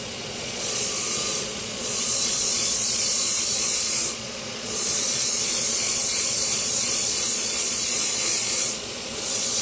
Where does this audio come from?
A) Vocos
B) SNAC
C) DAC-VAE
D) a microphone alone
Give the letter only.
A